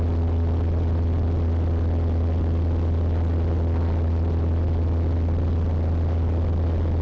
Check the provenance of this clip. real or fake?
real